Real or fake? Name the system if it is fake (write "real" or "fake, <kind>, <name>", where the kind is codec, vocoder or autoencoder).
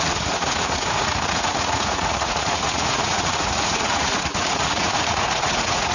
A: fake, vocoder, Vocos